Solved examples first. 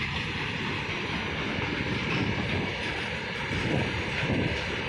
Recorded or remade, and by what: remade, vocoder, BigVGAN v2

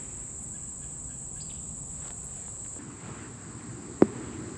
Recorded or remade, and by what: recorded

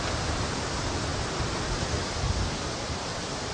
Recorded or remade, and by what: recorded